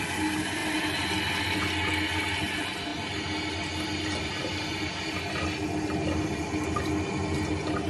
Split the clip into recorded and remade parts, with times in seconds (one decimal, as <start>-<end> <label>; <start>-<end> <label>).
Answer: 0.0-7.9 recorded